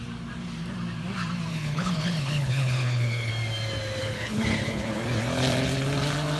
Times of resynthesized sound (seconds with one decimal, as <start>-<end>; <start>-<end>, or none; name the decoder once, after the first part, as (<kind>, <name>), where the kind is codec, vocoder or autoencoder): 1.5-3.3 (codec, HILCodec); 4.0-5.0